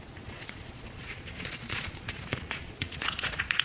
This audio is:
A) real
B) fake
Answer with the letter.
B